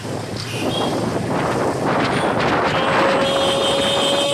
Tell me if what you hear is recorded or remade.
recorded